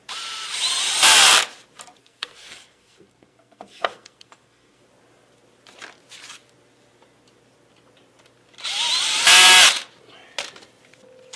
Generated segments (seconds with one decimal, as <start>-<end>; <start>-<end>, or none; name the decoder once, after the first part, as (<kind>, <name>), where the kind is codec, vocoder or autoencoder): 2.0-4.8 (codec, SNAC)